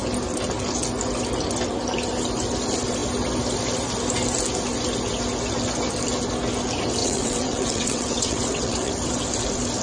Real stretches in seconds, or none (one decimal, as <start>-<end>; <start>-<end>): 0.0-7.0; 8.9-9.8